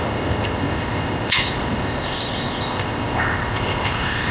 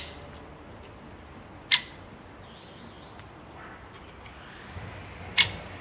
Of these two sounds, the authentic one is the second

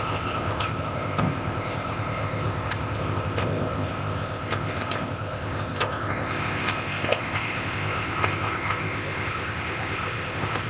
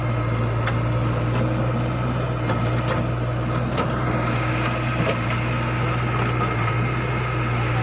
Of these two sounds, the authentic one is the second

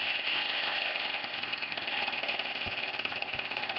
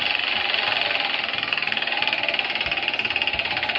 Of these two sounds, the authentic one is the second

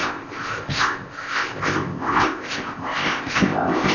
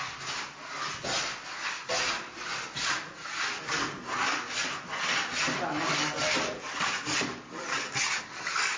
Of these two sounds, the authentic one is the second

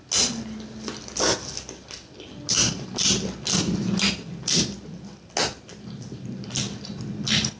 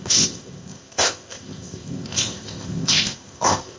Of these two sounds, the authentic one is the first